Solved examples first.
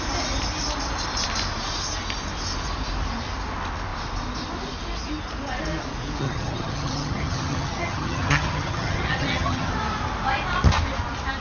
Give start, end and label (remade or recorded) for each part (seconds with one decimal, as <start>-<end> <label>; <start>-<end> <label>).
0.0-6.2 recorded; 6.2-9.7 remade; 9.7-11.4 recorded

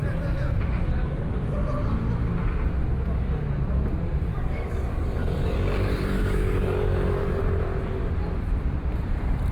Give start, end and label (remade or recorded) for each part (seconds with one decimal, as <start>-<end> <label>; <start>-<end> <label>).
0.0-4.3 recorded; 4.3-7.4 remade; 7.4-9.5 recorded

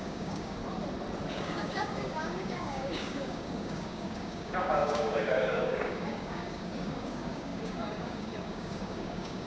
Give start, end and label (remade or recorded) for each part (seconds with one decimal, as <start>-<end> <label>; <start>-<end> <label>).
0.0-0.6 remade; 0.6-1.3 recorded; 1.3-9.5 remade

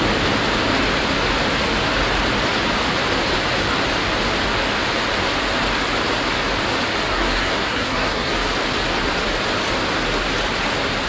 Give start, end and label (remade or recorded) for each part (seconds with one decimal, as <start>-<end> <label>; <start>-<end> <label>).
0.0-7.1 recorded; 7.1-8.3 remade; 8.3-11.1 recorded

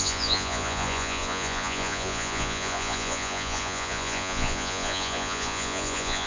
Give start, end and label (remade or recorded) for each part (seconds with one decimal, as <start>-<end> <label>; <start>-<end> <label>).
0.0-6.3 remade

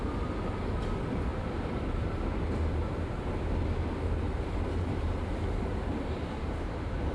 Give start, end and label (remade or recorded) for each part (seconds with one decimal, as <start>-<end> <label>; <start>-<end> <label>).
0.0-7.1 recorded

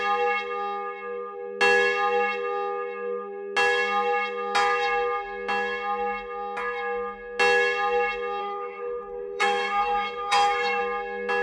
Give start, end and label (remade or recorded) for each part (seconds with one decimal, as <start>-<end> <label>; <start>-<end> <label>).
0.0-8.4 recorded; 8.4-10.8 remade; 10.8-11.4 recorded

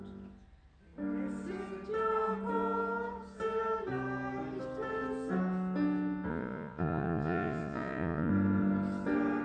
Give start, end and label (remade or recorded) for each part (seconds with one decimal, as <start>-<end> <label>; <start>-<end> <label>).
0.0-6.3 recorded; 6.3-8.3 remade; 8.3-9.4 recorded